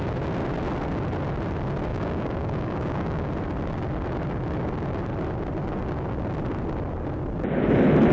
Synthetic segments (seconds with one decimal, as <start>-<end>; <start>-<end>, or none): 1.9-3.3